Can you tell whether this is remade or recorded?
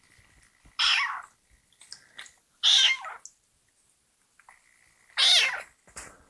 recorded